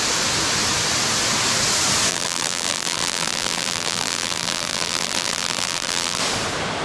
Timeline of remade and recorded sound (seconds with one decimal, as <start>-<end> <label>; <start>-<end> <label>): 0.0-2.1 recorded; 2.1-6.2 remade; 6.2-6.8 recorded